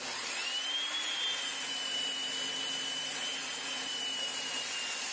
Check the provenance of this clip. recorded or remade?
recorded